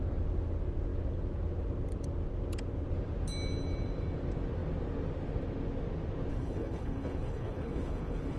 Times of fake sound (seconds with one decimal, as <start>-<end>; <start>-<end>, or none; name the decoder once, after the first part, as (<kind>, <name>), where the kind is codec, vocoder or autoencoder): 6.3-8.4 (codec, HILCodec)